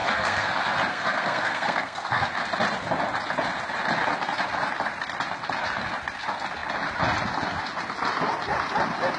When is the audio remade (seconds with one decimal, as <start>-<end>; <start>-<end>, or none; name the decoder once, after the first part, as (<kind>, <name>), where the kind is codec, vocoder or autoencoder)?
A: 0.0-0.5 (codec, SNAC); 0.9-2.3